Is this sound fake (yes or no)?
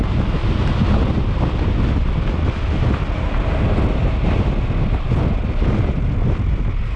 no